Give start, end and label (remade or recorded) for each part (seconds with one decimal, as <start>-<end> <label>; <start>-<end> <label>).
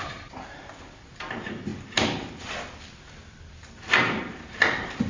0.0-5.1 remade